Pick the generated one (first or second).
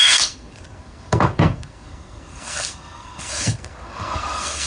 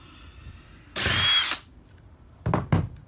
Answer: first